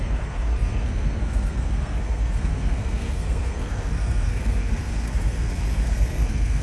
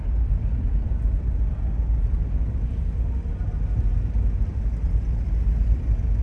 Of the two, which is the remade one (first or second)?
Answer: first